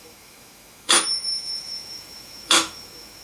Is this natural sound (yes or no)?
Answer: no